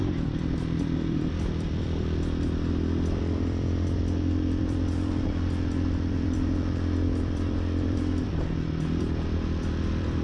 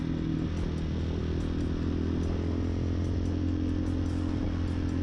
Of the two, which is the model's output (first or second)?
first